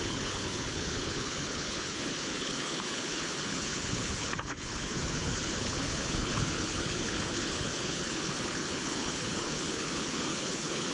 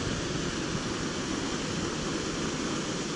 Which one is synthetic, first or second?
first